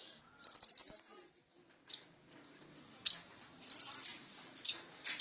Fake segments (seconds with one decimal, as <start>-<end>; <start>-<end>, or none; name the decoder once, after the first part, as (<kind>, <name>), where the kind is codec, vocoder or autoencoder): none